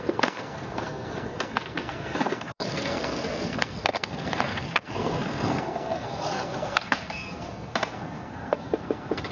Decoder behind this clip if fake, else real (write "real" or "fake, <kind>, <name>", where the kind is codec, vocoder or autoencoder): fake, codec, SNAC